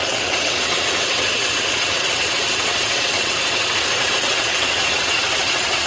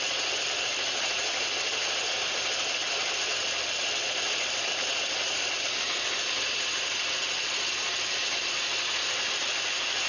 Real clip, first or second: second